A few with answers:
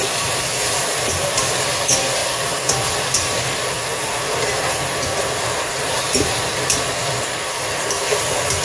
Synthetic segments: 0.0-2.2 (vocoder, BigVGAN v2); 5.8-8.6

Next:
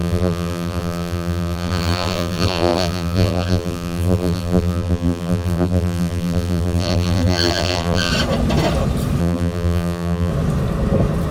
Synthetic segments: 0.0-8.1 (vocoder, BigVGAN v2); 9.2-10.3